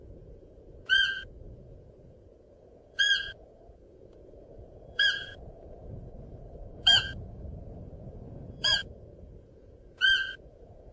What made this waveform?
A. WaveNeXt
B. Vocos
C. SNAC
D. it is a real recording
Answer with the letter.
B